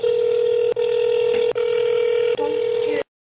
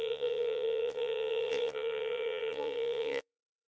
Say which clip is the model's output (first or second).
second